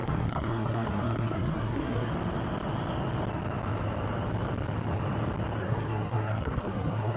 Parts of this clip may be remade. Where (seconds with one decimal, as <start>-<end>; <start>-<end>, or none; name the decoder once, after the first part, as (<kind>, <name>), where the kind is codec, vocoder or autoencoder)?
0.0-2.1 (codec, SNAC); 5.6-7.2